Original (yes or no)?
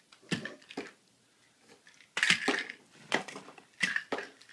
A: yes